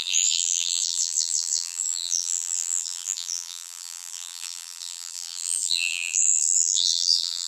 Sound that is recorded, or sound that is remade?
remade